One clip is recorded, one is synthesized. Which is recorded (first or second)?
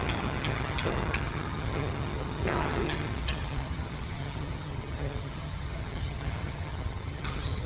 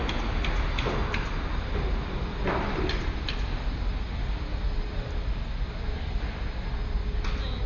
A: second